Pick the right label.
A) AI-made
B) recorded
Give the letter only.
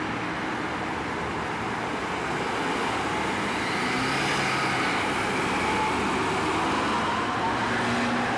B